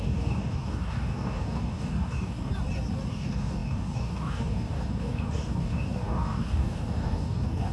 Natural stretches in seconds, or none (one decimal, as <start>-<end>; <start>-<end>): 2.5-3.1